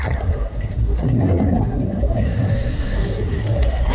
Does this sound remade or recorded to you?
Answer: remade